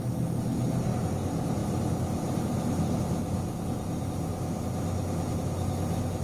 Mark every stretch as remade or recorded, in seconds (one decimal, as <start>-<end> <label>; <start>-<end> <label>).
0.0-6.2 recorded